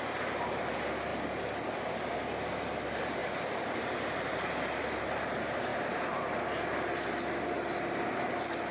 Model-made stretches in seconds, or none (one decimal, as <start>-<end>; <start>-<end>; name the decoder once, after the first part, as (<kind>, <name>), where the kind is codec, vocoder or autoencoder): none